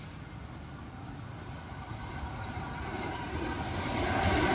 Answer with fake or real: real